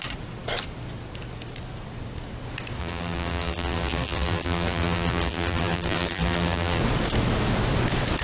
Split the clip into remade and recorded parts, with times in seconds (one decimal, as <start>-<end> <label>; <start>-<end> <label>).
0.0-2.8 recorded; 2.8-6.8 remade; 6.8-8.2 recorded